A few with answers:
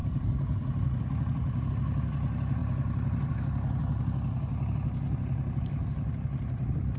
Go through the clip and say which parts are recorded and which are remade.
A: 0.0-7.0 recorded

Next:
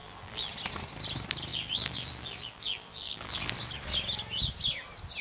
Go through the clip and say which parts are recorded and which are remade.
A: 0.0-0.5 remade; 0.5-1.5 recorded; 1.5-3.5 remade; 3.5-5.2 recorded

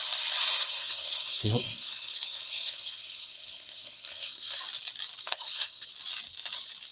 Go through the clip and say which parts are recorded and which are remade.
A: 0.0-0.5 recorded; 0.5-4.6 remade; 4.6-5.2 recorded; 5.2-5.9 remade; 5.9-6.9 recorded

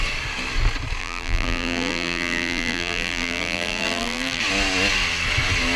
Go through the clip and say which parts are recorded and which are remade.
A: 0.0-1.0 recorded; 1.0-4.4 remade; 4.4-5.8 recorded